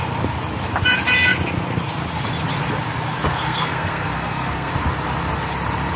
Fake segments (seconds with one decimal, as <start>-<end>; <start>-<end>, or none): 3.3-4.7